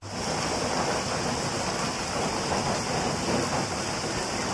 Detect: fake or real real